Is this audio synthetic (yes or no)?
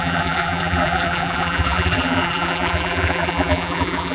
yes